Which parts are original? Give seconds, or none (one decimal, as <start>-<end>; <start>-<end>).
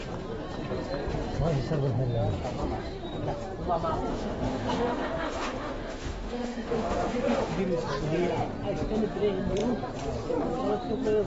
0.0-4.1; 7.6-11.3